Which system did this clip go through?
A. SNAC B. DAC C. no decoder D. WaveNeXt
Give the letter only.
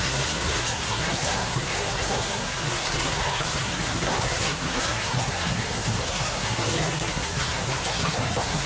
A